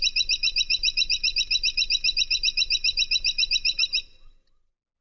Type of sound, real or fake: real